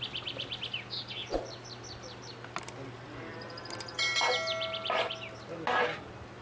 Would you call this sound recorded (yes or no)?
yes